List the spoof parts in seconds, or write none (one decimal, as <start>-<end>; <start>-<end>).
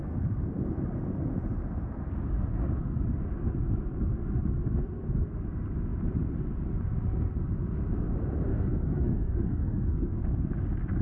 8.5-10.2